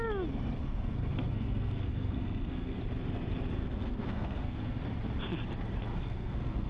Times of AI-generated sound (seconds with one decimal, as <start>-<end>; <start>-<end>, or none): 0.6-2.8; 3.6-4.8; 5.9-6.7